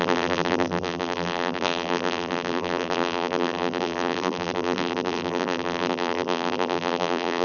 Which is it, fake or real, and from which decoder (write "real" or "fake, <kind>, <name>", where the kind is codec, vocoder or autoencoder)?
fake, vocoder, BigVGAN v2